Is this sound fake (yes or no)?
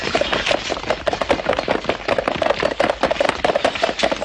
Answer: no